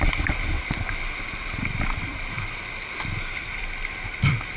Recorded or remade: recorded